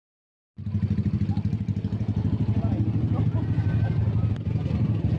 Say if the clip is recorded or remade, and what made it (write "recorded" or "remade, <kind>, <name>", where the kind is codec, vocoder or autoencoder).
recorded